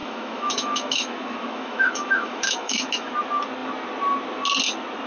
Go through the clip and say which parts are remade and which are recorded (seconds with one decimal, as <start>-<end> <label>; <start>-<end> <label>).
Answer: 0.0-3.1 remade; 3.1-5.1 recorded